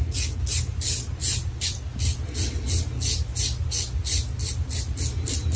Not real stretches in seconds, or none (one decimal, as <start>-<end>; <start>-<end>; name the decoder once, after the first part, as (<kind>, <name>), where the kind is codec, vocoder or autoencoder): none